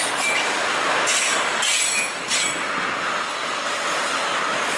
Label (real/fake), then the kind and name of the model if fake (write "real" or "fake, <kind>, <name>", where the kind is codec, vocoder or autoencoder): real